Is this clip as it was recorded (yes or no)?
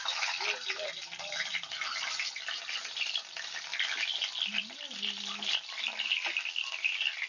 yes